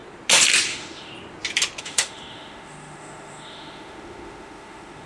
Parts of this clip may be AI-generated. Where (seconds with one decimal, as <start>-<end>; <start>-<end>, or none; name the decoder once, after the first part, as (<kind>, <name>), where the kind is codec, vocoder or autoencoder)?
0.7-1.1 (autoencoder, DAC-VAE); 1.8-5.1

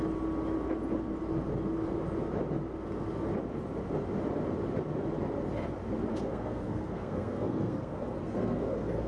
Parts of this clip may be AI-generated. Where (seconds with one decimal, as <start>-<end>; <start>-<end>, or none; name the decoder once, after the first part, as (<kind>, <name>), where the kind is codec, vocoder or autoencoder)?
6.1-9.1 (codec, SNAC)

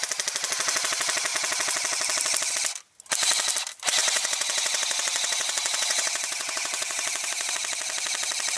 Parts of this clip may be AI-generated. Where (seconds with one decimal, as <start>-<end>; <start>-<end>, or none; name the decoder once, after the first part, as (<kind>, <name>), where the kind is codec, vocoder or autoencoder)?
4.0-7.5 (vocoder, WaveNeXt)